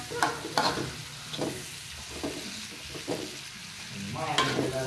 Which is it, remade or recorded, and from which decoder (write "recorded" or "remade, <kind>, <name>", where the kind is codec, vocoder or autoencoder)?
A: recorded